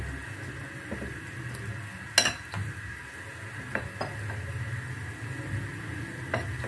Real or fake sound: real